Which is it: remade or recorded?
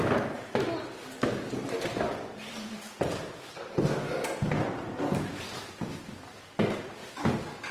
recorded